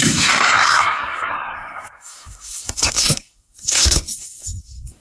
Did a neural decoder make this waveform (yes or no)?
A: yes